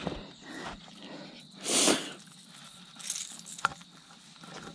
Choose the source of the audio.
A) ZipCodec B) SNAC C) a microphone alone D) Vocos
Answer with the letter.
C